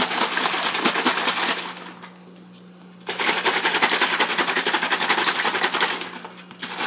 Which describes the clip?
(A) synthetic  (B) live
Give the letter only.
B